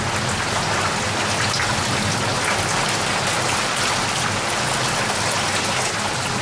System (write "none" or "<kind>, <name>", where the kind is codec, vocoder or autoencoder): none